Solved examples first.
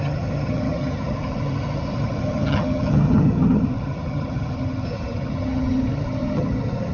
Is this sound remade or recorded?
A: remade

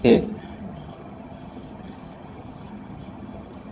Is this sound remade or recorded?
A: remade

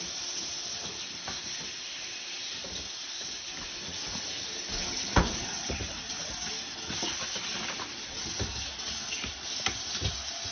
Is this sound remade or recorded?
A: recorded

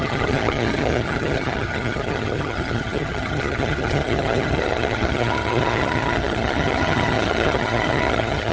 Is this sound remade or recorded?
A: remade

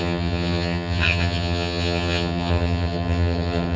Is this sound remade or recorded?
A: remade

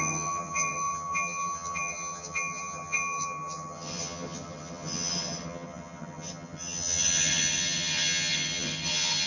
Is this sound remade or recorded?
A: remade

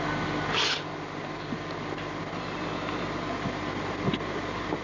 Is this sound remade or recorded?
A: recorded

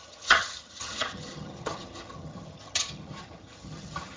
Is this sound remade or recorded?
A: remade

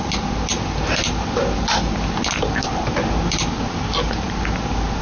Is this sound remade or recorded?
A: recorded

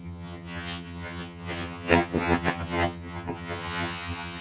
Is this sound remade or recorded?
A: remade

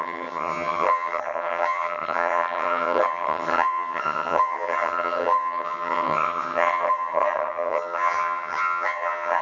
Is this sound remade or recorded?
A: remade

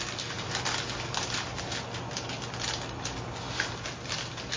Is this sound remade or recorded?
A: recorded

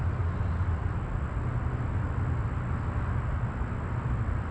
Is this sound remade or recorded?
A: recorded